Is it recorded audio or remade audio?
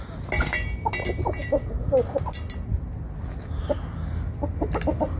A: recorded